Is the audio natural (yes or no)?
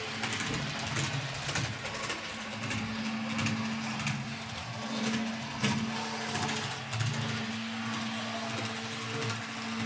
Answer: yes